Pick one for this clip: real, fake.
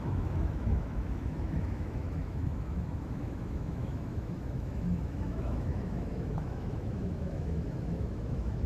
fake